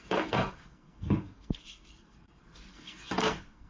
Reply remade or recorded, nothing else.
remade